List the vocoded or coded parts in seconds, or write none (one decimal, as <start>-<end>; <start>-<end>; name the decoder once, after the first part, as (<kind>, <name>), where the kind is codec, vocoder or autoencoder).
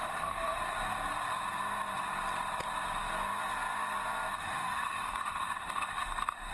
0.0-0.6 (autoencoder, DAC-VAE); 4.4-6.5